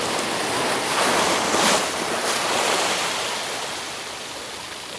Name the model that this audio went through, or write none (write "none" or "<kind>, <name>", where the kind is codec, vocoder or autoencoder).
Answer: none